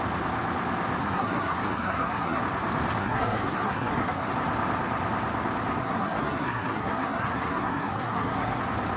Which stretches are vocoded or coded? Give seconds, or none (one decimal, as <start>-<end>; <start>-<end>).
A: 1.0-2.4; 3.0-4.3; 5.8-8.6